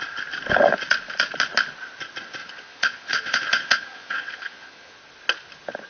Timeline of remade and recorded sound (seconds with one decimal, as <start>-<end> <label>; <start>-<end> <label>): 0.0-2.4 recorded; 2.4-5.0 remade; 5.0-5.9 recorded